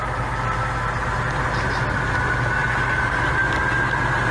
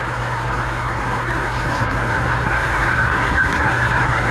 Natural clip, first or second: first